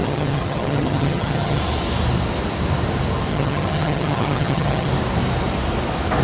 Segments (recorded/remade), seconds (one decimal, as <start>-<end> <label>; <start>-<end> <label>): 0.0-1.6 remade; 1.6-3.3 recorded; 3.3-4.9 remade; 4.9-6.2 recorded